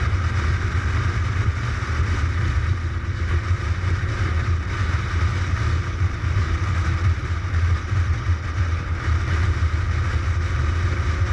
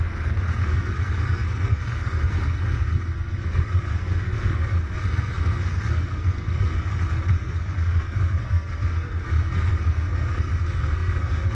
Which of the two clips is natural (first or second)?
first